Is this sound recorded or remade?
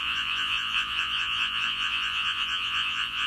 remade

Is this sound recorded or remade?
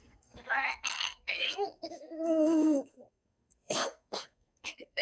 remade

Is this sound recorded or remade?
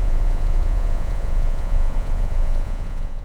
remade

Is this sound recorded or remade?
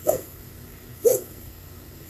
remade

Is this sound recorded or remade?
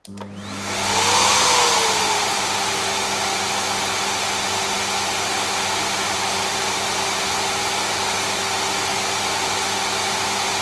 recorded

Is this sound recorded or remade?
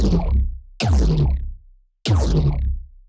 recorded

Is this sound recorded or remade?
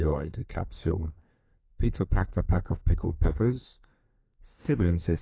remade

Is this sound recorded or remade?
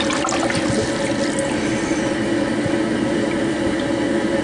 recorded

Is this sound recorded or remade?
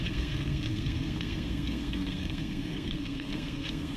remade